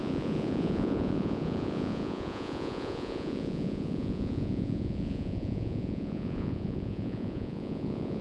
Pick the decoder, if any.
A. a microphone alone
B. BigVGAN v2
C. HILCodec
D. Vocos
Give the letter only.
D